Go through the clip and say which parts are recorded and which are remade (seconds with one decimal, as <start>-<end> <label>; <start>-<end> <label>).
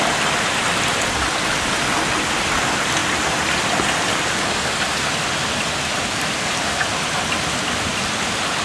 0.0-8.6 recorded